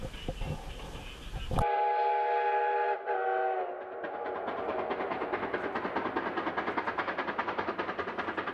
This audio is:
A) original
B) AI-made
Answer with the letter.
A